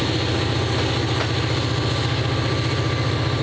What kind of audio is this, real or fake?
real